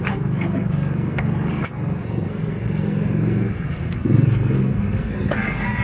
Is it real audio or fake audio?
fake